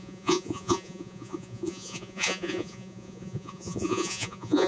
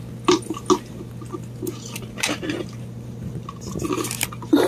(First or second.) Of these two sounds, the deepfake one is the first